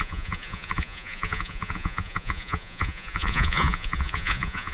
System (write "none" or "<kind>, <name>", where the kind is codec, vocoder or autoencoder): vocoder, Vocos